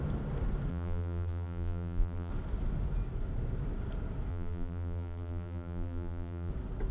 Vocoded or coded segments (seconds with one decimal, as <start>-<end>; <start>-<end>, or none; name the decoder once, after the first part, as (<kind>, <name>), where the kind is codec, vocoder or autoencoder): 0.7-2.3 (vocoder, BigVGAN v2); 4.3-6.5

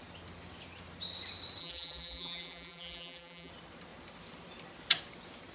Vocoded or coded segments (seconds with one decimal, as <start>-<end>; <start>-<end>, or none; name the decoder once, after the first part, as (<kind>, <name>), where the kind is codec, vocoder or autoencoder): 1.6-3.5 (vocoder, BigVGAN v2)

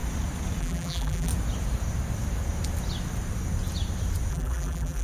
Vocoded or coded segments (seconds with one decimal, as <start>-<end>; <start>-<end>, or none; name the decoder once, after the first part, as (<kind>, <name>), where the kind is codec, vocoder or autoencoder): 0.6-1.3 (vocoder, BigVGAN v2); 4.3-5.0

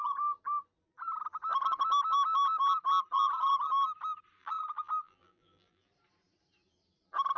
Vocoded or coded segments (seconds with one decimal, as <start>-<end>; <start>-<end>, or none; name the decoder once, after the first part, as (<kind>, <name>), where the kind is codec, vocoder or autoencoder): 4.4-5.9 (vocoder, BigVGAN v2)

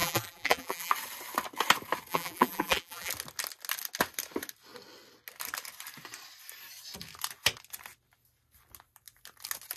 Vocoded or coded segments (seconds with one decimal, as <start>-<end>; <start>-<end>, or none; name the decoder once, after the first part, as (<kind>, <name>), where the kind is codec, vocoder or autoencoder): 0.0-0.9 (vocoder, BigVGAN v2); 2.1-3.1

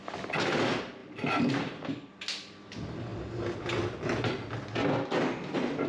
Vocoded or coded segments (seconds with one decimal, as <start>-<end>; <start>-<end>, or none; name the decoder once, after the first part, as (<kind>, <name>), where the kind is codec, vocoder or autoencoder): 1.0-1.9 (vocoder, BigVGAN v2)